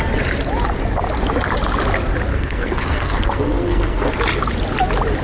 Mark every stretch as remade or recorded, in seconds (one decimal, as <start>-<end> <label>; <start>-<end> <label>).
0.0-2.3 recorded; 2.3-4.1 remade; 4.1-5.2 recorded